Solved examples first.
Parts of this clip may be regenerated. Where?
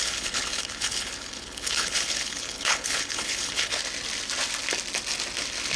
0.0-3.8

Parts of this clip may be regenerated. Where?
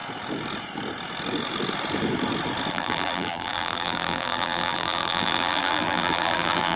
2.7-6.8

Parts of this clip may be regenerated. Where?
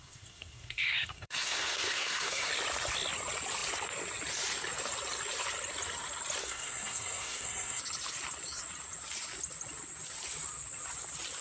0.0-2.5; 6.4-7.8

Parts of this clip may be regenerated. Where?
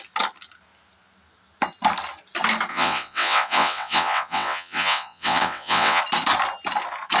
2.7-6.0